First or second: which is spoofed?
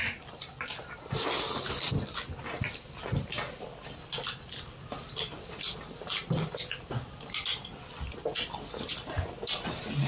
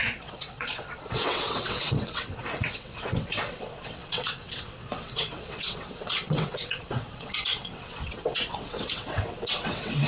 second